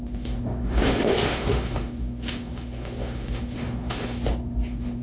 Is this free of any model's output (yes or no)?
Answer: no